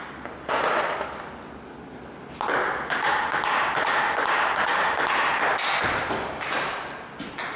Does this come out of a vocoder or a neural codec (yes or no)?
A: no